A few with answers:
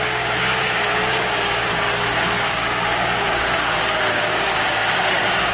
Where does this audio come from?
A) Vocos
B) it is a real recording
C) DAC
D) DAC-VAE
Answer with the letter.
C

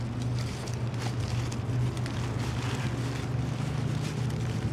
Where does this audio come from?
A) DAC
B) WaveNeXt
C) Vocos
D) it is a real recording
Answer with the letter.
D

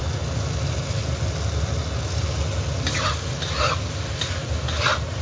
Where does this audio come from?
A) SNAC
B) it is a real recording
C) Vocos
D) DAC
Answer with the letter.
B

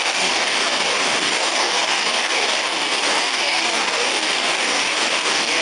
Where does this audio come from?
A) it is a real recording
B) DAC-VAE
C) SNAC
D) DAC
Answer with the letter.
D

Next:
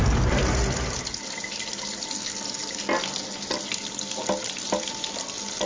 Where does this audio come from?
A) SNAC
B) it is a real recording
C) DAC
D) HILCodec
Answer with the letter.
B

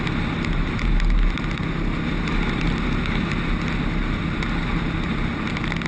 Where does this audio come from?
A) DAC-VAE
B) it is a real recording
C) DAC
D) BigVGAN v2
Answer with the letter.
B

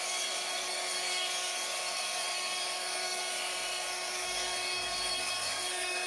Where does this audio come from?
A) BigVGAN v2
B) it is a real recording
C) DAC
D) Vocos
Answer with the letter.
C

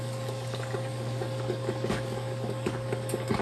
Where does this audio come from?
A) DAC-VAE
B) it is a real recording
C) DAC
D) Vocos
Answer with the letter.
C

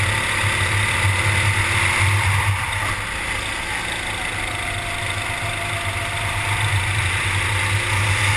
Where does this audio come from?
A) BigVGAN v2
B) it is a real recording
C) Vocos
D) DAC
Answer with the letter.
B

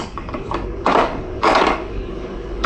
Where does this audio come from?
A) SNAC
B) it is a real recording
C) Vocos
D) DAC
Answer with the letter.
D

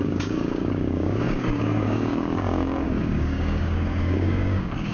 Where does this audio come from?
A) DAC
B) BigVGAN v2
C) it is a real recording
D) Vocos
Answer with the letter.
A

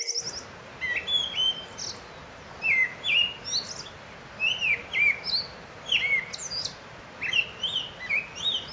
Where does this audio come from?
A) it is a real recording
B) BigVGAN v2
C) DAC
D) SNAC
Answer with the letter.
A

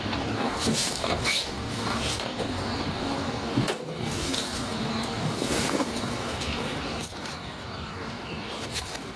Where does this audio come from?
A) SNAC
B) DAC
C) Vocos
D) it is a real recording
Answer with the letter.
B